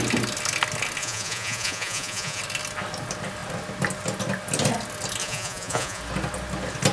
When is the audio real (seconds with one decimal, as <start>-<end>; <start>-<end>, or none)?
0.0-1.0; 2.4-5.2; 6.0-6.9